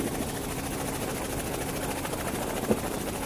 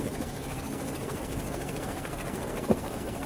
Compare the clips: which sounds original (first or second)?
first